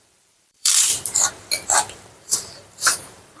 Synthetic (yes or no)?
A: yes